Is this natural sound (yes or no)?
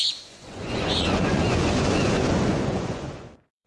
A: no